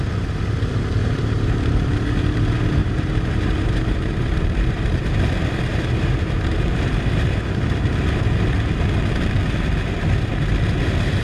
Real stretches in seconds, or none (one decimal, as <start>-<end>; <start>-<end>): 0.0-1.0; 1.9-2.8; 5.1-5.7; 7.8-11.2